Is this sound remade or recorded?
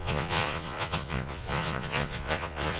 remade